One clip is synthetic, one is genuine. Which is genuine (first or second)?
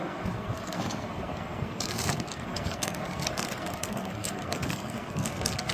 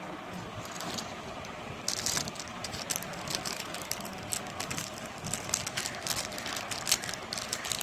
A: second